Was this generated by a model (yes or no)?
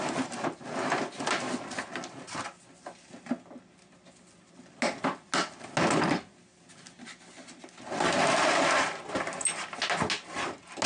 no